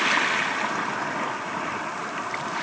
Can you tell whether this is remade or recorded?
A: recorded